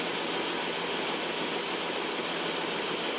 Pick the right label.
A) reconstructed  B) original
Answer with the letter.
B